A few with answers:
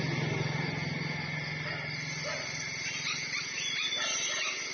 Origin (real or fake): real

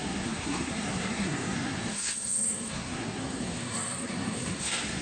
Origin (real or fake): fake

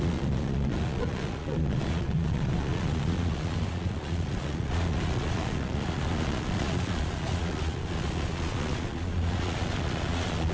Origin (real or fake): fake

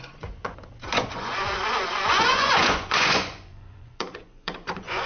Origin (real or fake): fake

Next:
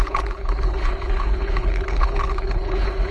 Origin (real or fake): fake